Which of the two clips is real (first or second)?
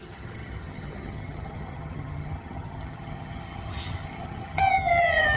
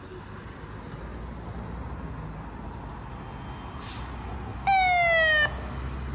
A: second